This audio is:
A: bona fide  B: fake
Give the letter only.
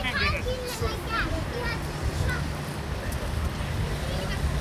A